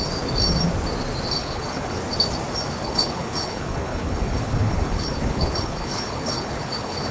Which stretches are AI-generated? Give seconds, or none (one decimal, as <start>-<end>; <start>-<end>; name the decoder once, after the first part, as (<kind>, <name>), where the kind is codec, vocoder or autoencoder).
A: 1.4-2.0 (codec, HILCodec); 2.8-7.1